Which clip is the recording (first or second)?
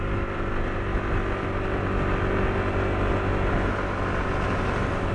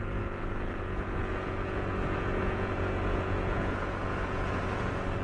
first